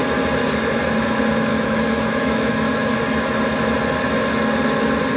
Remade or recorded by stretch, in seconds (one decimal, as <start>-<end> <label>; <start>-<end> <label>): 0.0-1.5 recorded; 1.5-3.0 remade; 3.0-5.2 recorded